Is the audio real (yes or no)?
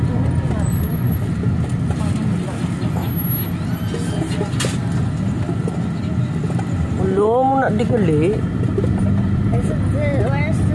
yes